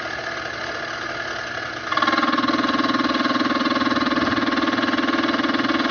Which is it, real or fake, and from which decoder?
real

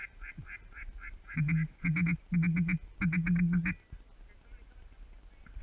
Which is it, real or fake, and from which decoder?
real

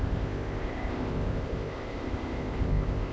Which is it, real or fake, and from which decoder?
fake, codec, ZipCodec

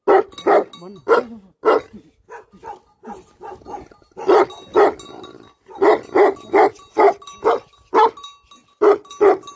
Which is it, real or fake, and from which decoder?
real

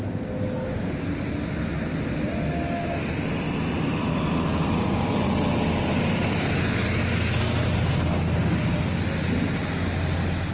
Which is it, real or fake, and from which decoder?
real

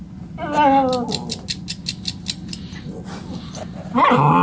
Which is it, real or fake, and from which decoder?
real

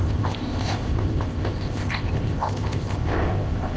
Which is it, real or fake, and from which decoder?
fake, codec, ZipCodec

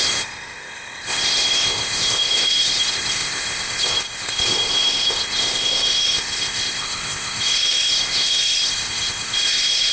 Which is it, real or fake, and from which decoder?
fake, codec, ZipCodec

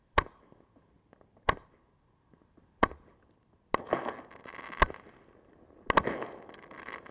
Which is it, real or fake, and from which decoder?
real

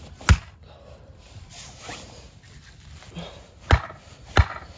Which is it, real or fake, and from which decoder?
real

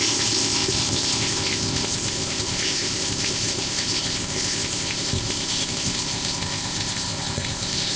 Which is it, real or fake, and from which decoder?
fake, codec, ZipCodec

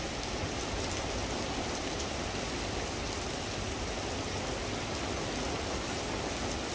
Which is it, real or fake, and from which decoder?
real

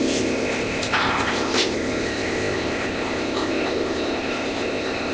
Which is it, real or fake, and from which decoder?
fake, codec, ZipCodec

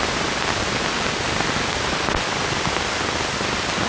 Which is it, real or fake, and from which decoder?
real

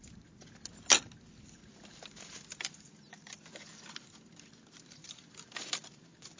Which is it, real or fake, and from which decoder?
real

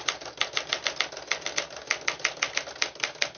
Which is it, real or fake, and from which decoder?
real